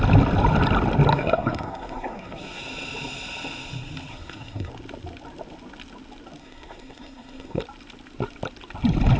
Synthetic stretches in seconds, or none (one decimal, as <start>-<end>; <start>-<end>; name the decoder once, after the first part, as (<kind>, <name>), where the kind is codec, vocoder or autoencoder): 1.1-2.6 (codec, SNAC); 4.1-4.7; 6.4-7.6